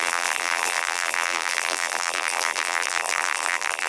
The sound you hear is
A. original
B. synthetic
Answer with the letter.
B